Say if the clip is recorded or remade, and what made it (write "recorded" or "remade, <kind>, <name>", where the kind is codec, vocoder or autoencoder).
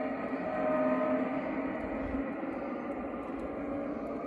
recorded